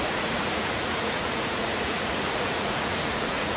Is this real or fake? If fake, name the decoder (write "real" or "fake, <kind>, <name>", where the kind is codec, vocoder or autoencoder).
fake, vocoder, Vocos